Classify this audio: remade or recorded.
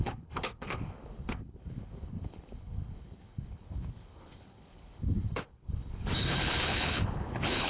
remade